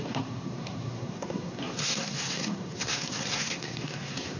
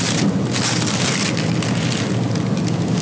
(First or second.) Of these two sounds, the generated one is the first